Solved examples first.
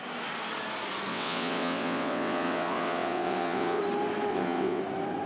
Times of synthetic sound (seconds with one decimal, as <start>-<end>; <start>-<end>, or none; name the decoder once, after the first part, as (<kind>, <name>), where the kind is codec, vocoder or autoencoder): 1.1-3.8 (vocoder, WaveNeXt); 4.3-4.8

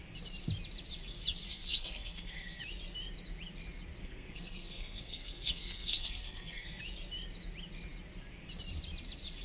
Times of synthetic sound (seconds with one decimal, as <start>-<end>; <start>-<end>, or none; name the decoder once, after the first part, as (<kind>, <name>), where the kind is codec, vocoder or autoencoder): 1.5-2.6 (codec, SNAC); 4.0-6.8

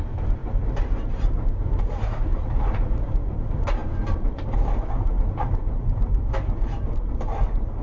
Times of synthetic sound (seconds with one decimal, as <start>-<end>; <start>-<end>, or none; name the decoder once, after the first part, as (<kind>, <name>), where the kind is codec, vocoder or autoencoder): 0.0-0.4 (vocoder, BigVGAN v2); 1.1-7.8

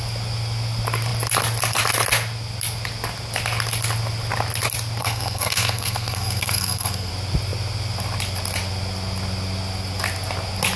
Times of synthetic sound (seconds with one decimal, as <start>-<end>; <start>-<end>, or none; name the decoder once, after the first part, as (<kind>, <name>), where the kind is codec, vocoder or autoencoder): 5.0-7.1 (codec, SNAC)